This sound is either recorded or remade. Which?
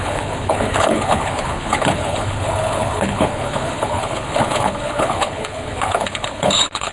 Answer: remade